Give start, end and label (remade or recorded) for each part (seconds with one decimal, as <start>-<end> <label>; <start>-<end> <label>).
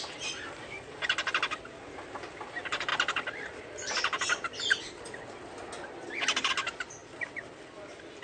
0.0-8.2 recorded